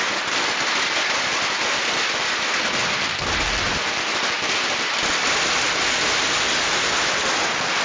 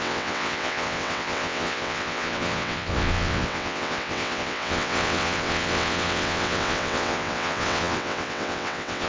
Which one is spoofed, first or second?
second